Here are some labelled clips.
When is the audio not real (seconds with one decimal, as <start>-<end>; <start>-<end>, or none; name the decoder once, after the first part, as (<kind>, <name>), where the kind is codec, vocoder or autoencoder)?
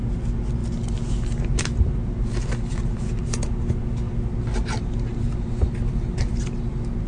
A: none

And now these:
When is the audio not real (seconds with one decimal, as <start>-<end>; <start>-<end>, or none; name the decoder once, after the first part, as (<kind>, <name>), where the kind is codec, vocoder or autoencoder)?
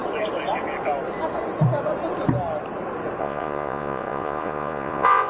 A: 3.2-5.3 (vocoder, Vocos)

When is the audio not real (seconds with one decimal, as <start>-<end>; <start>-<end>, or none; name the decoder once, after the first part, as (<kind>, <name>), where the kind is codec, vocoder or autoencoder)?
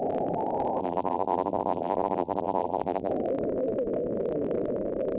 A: 0.8-3.1 (vocoder, BigVGAN v2)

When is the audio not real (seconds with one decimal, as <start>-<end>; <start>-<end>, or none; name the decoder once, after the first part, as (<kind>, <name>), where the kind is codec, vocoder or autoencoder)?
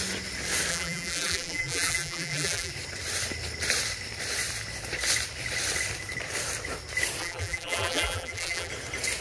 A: 0.7-2.7 (vocoder, BigVGAN v2); 7.2-8.7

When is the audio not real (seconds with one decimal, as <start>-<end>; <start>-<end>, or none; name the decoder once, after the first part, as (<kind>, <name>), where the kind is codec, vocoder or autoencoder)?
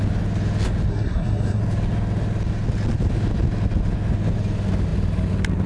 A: 0.9-1.6 (codec, SNAC)